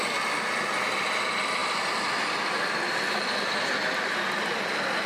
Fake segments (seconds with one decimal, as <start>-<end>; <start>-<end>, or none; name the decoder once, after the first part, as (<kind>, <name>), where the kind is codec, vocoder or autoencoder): 1.6-3.4 (vocoder, BigVGAN v2)